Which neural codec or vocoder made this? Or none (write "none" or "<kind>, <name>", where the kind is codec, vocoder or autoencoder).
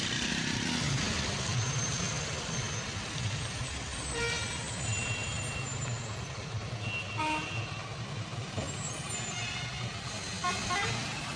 none